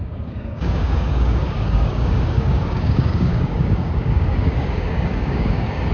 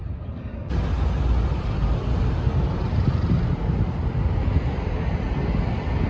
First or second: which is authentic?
second